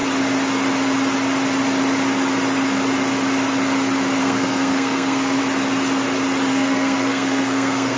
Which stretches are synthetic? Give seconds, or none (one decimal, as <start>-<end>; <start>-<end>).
4.2-5.4; 6.5-8.0